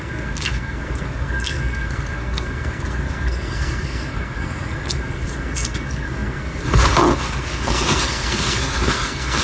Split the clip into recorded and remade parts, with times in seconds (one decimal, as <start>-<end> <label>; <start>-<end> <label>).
0.0-9.4 remade

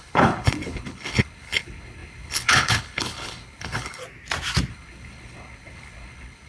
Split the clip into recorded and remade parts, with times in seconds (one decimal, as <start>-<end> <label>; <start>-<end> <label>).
0.0-4.0 remade; 4.0-4.7 recorded; 4.7-6.5 remade

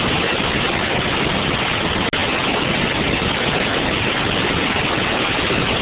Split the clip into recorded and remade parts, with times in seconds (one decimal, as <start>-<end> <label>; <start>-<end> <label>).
0.0-5.8 recorded

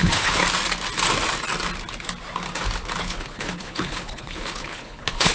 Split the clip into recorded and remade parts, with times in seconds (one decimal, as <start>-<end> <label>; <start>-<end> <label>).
0.0-0.4 remade; 0.4-3.0 recorded; 3.0-5.3 remade